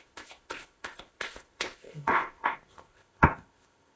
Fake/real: fake